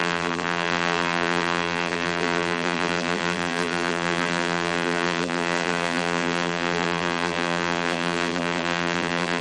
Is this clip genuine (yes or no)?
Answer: no